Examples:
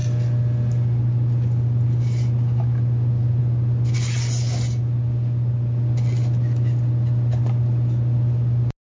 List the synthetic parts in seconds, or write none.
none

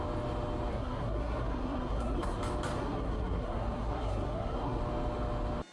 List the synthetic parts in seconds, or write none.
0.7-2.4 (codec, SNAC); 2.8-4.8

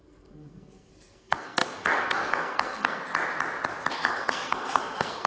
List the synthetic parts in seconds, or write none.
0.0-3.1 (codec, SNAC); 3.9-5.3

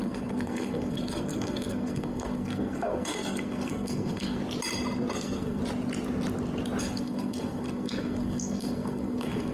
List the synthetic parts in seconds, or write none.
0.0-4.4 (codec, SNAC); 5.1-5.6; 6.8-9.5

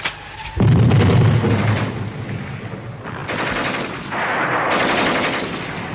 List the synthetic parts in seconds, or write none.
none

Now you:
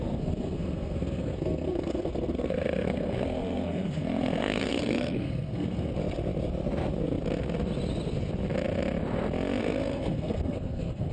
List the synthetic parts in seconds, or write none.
0.0-5.9 (codec, SNAC); 9.6-11.1